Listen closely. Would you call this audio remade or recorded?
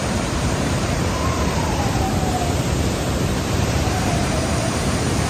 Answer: remade